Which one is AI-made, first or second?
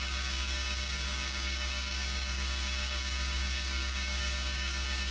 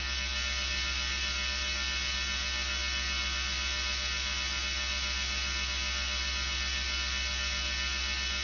first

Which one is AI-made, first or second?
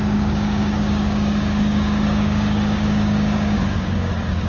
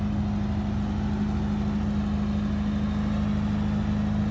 first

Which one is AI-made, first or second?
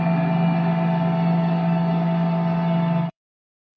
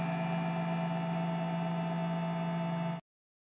first